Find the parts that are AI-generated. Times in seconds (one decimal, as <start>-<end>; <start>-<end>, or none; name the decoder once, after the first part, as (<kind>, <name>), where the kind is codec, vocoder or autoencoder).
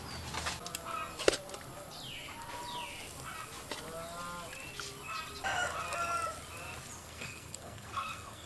7.0-8.5 (codec, SNAC)